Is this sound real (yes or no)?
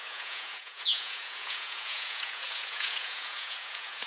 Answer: no